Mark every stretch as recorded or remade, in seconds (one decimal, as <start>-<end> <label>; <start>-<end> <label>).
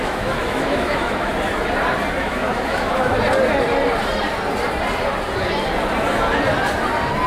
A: 0.0-1.3 remade; 1.3-2.2 recorded; 2.2-3.1 remade; 3.1-7.3 recorded